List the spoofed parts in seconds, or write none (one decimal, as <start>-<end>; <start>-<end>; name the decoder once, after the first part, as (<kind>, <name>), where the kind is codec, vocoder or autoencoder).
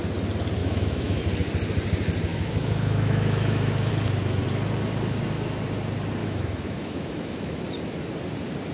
0.6-1.2 (autoencoder, DAC-VAE); 2.3-3.9; 6.2-7.6